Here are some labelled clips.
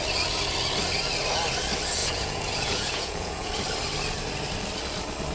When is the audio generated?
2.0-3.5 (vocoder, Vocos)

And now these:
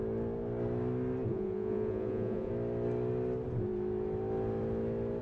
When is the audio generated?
1.3-2.5 (vocoder, Vocos)

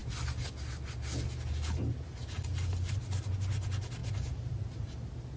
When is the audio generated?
none

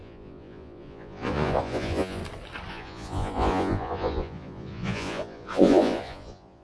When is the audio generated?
0.0-2.2 (vocoder, Vocos); 2.7-6.6

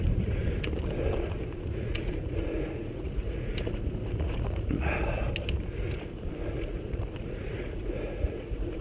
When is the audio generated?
0.0-0.4 (vocoder, Vocos); 1.7-5.2; 6.6-8.8

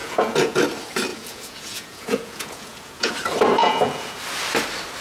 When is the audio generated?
0.0-0.6 (vocoder, Vocos); 1.1-3.1; 3.6-4.2

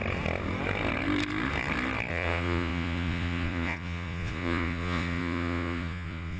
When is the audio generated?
2.1-6.4 (vocoder, Vocos)

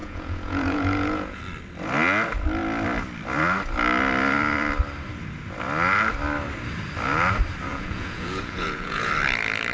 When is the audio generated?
0.0-1.4 (vocoder, Vocos); 7.7-9.1